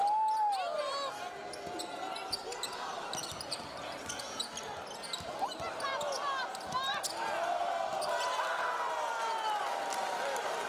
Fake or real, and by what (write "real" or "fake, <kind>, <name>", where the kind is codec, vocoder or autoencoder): real